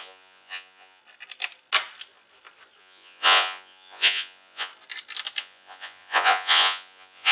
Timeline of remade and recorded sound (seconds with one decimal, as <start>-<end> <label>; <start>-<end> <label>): 0.0-1.0 remade; 1.0-2.8 recorded; 2.8-4.7 remade; 4.7-5.4 recorded; 5.4-7.3 remade